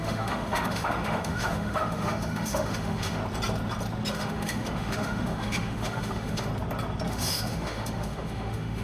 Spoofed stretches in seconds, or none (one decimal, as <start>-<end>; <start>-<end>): 0.0-3.2; 4.1-6.5; 7.1-8.8